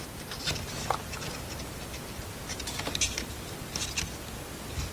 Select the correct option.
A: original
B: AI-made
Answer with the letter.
A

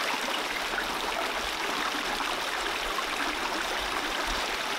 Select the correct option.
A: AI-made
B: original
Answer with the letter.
B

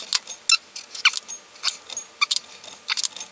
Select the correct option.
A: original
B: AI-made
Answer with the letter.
A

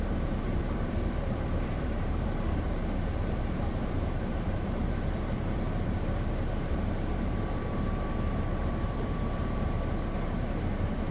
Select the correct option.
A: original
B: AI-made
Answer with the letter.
B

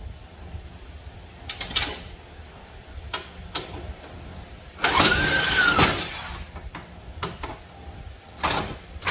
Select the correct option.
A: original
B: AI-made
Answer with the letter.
B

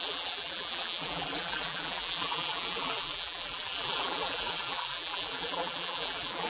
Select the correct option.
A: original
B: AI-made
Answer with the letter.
B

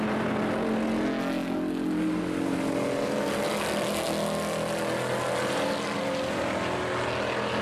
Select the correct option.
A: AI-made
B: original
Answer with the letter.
B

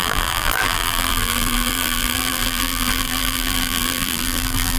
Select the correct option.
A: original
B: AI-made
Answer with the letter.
B